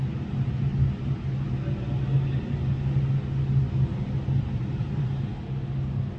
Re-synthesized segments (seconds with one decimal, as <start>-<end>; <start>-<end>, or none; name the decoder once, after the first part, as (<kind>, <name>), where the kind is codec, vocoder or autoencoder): 0.0-0.7 (vocoder, BigVGAN v2); 4.4-5.3